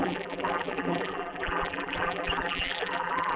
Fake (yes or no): yes